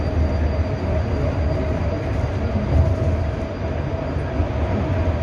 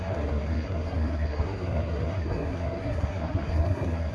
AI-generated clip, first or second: second